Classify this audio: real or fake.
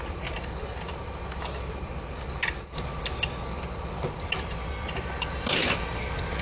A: real